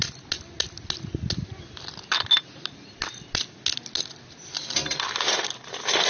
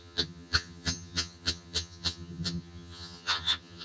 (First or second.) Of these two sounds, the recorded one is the first